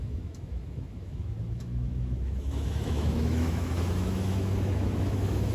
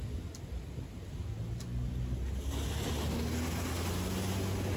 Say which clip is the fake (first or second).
first